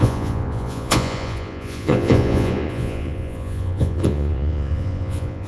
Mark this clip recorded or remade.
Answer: remade